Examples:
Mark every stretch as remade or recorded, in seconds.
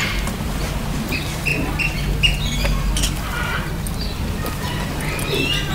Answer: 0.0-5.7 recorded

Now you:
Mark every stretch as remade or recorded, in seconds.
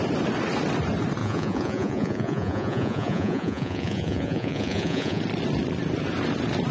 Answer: 0.0-1.2 recorded; 1.2-5.2 remade; 5.2-6.7 recorded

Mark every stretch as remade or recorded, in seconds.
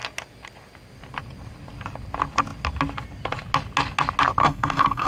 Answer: 0.0-4.4 recorded; 4.4-5.1 remade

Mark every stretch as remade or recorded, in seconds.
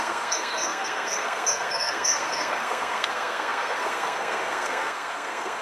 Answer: 0.0-5.6 remade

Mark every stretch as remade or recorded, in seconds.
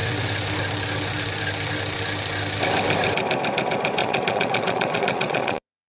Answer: 0.0-4.0 recorded; 4.0-5.9 remade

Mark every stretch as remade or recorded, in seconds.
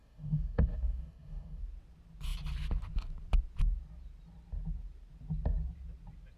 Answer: 0.0-1.6 remade; 1.6-6.4 recorded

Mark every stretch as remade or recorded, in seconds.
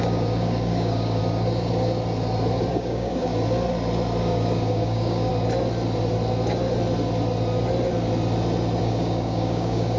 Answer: 0.0-1.2 remade; 1.2-2.7 recorded; 2.7-3.3 remade; 3.3-4.2 recorded; 4.2-5.3 remade; 5.3-8.8 recorded; 8.8-10.0 remade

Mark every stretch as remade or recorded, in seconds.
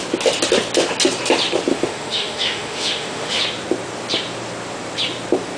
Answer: 0.0-1.7 recorded; 1.7-3.4 remade; 3.4-5.6 recorded